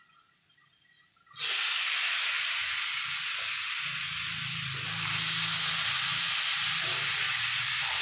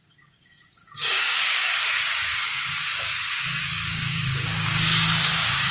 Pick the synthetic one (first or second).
second